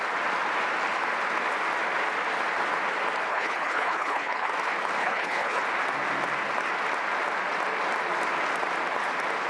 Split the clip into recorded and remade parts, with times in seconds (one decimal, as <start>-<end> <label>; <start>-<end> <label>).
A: 0.0-3.3 recorded; 3.3-4.5 remade; 4.5-5.0 recorded; 5.0-5.6 remade; 5.6-9.5 recorded